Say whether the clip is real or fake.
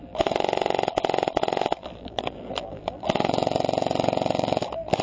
fake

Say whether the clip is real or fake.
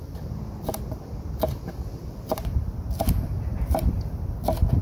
real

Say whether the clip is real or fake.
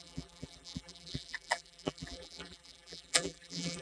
fake